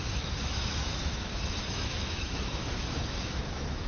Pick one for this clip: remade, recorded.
remade